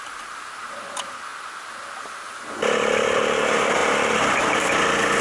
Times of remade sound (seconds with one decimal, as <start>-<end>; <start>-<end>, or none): none